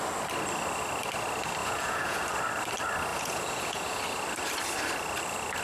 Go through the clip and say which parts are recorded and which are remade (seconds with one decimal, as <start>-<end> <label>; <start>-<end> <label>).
0.0-1.6 recorded; 1.6-2.2 remade; 2.2-3.1 recorded; 3.1-4.0 remade; 4.0-5.6 recorded